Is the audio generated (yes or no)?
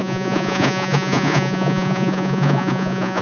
yes